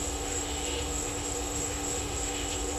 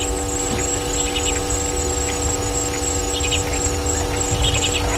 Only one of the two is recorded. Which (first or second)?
second